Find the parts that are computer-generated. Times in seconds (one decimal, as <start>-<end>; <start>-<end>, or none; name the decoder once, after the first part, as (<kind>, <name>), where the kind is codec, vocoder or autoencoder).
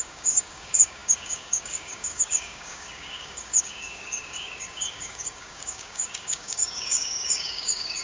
0.0-8.0 (codec, DAC)